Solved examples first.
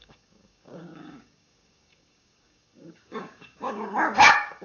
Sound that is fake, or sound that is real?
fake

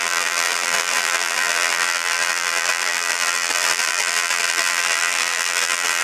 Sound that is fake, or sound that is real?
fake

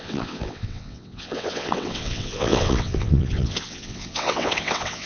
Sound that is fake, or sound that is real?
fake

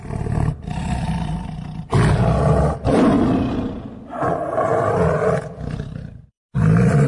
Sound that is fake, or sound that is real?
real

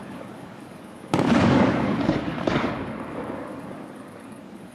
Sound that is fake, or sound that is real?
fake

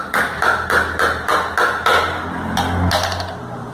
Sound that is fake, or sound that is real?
real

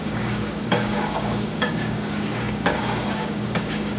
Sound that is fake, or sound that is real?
fake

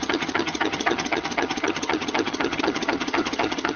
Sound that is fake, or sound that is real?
fake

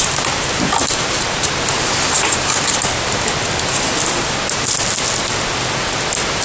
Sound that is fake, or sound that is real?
real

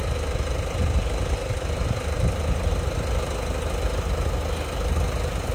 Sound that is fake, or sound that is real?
real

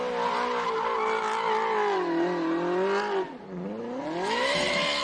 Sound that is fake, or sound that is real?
real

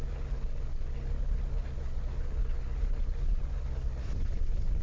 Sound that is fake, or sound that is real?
fake